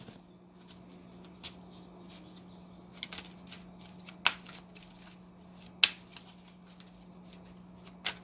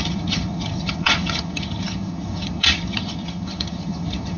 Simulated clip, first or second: second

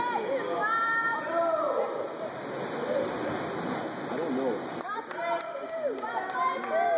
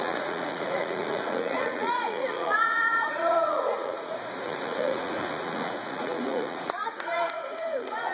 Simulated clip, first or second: second